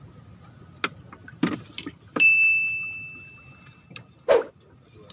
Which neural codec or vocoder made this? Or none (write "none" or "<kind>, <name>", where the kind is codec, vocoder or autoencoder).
none